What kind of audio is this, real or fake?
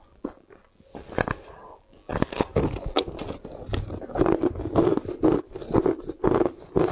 real